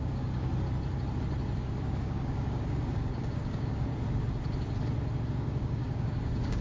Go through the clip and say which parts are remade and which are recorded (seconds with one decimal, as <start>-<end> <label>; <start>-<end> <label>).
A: 0.0-0.5 remade; 0.5-1.6 recorded; 1.6-3.9 remade; 3.9-5.3 recorded; 5.3-6.6 remade